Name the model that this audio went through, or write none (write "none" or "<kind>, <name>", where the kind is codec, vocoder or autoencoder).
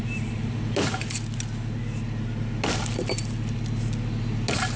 none